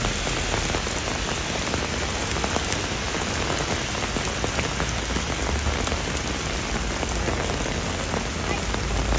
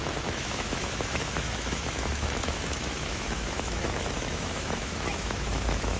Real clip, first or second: first